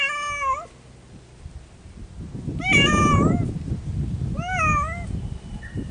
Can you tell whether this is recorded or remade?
recorded